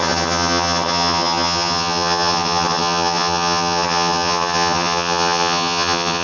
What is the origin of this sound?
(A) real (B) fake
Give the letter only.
B